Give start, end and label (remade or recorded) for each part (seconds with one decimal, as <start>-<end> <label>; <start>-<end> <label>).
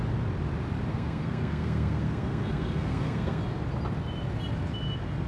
0.0-0.9 recorded; 0.9-3.4 remade; 3.4-5.3 recorded